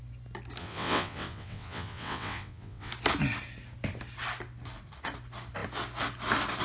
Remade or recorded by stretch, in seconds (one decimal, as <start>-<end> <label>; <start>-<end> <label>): 0.0-0.6 recorded; 0.6-2.9 remade; 2.9-6.6 recorded